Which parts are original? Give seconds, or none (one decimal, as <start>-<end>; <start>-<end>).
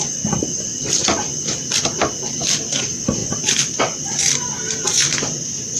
0.0-0.7; 1.3-3.2; 4.0-5.0